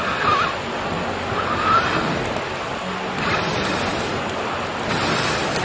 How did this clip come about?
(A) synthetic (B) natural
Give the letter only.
B